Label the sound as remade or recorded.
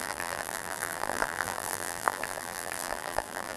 remade